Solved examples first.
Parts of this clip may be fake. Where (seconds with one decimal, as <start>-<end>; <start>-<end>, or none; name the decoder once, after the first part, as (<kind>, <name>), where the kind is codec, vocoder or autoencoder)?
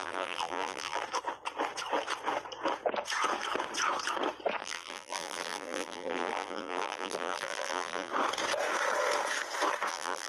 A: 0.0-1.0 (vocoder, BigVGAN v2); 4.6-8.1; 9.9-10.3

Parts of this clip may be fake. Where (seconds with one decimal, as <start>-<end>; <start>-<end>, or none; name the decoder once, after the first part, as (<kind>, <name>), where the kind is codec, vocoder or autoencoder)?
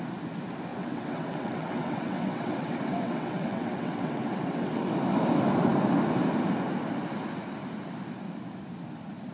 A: 0.7-4.9 (vocoder, WaveNeXt)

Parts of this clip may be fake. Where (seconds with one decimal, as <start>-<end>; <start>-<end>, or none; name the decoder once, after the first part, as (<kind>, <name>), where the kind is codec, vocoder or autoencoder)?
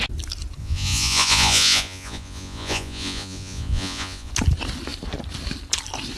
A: 0.6-4.3 (vocoder, Vocos)